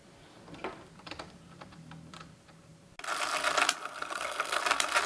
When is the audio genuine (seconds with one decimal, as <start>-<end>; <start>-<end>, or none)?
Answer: 0.0-3.8; 4.6-5.1